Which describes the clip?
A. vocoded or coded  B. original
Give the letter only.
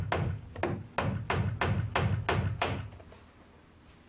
B